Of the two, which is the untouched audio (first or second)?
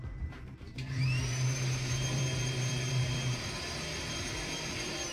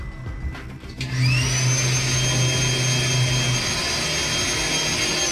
second